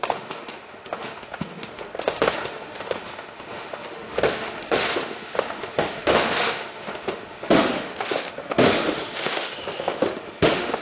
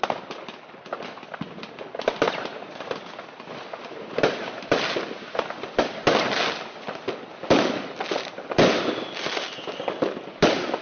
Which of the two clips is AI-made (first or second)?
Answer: first